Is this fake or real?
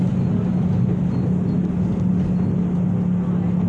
real